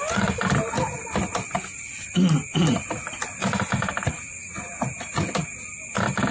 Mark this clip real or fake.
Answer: real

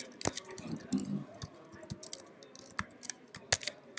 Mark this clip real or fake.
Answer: real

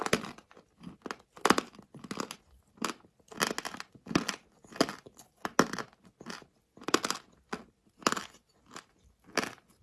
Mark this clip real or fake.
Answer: real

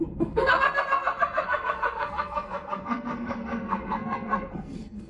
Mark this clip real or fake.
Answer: fake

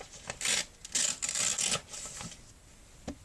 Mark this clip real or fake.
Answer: real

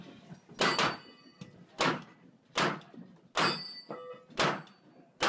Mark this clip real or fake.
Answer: real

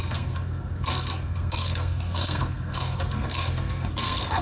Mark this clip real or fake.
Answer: fake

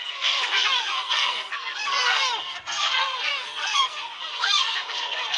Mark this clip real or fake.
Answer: fake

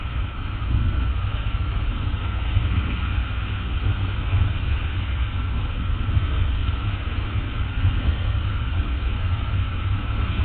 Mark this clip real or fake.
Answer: fake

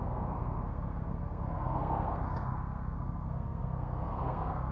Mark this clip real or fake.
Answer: fake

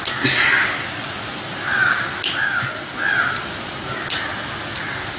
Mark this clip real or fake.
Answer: real